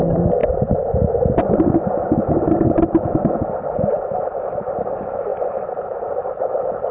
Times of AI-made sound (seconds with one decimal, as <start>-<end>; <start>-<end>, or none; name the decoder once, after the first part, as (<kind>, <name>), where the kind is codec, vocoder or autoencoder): none